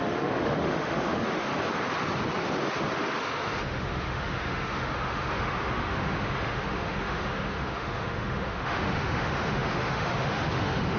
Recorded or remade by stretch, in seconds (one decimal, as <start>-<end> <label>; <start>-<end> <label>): 0.0-1.5 remade; 1.5-3.2 recorded; 3.2-11.0 remade